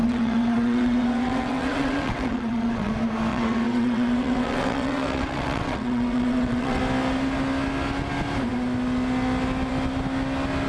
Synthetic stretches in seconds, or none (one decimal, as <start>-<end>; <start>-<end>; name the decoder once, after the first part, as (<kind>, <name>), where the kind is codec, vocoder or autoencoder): 0.0-2.9 (vocoder, WaveNeXt); 3.3-6.8

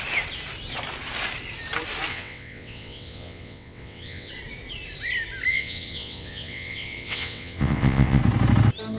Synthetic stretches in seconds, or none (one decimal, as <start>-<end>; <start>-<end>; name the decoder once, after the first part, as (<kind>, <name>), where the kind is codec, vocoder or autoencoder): 2.1-4.3 (vocoder, WaveNeXt); 5.5-8.2

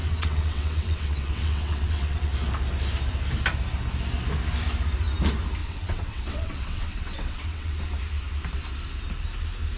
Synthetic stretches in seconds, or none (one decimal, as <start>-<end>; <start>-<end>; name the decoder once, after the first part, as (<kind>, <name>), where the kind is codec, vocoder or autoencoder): 0.0-2.3 (vocoder, WaveNeXt); 5.6-7.8

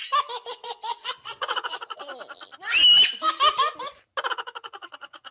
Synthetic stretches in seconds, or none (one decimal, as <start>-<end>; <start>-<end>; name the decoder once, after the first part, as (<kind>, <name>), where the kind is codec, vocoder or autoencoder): 0.5-2.1 (vocoder, WaveNeXt); 4.3-5.3